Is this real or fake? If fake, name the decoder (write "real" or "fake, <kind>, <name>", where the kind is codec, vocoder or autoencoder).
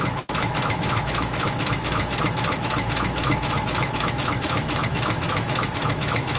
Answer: fake, autoencoder, DAC-VAE